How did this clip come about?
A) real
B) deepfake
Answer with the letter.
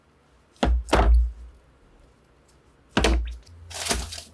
A